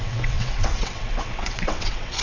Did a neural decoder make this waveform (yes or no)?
yes